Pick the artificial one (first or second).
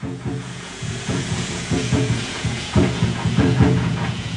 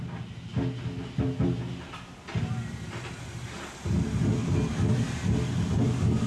first